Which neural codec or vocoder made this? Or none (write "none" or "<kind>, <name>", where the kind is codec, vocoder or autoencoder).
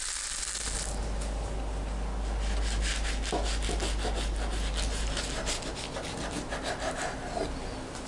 none